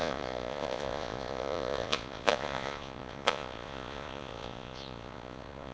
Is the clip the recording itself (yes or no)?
no